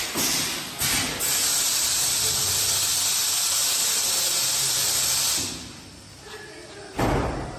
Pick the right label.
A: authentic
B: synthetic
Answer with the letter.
A